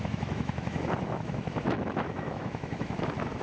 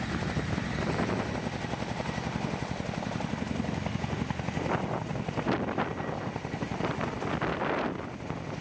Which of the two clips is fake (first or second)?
first